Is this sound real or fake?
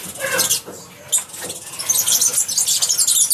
real